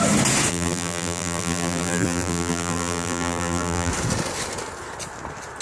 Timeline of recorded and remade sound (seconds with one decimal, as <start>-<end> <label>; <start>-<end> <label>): 0.0-0.5 recorded; 0.5-3.9 remade; 3.9-5.6 recorded